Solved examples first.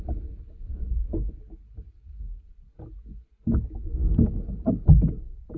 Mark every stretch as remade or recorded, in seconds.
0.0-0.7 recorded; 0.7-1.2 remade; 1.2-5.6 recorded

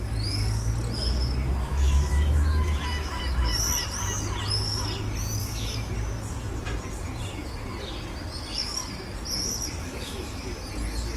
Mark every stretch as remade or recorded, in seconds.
0.0-1.7 recorded; 1.7-3.1 remade; 3.1-5.4 recorded; 5.4-5.9 remade; 5.9-9.8 recorded; 9.8-10.4 remade; 10.4-11.2 recorded

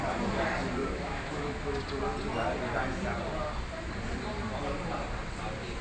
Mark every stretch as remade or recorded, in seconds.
0.0-0.8 recorded; 0.8-1.8 remade; 1.8-5.8 recorded

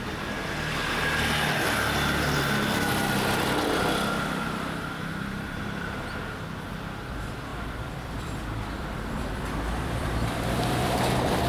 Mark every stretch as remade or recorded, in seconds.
0.0-7.5 recorded; 7.5-11.0 remade; 11.0-11.5 recorded

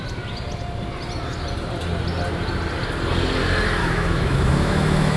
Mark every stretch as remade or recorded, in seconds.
0.0-3.8 recorded; 3.8-5.2 remade

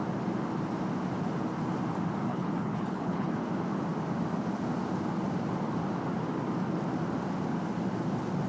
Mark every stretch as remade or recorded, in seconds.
0.0-2.3 recorded; 2.3-3.3 remade; 3.3-8.5 recorded

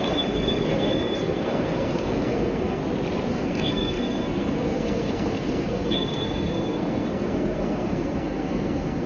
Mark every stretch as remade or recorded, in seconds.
0.0-2.8 remade; 2.8-3.3 recorded; 3.3-9.1 remade